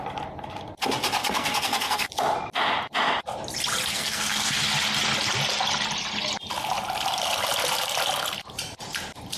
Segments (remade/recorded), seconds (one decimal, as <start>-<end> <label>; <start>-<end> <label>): 0.0-1.2 recorded; 1.2-2.1 remade; 2.1-3.9 recorded; 3.9-4.6 remade; 4.6-9.4 recorded